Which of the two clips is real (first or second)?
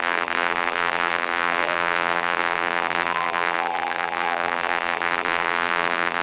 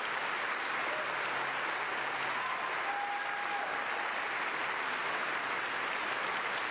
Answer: second